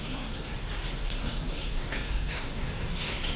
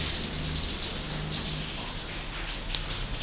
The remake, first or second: first